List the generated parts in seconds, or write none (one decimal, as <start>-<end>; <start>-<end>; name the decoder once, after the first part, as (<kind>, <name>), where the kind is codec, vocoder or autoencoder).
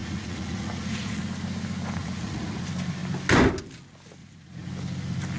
0.0-1.2 (vocoder, Vocos); 2.0-2.6; 4.2-4.7